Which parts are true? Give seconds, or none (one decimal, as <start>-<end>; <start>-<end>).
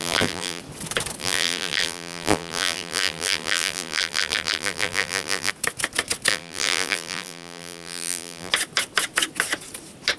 0.6-1.2; 5.5-6.3; 8.5-10.2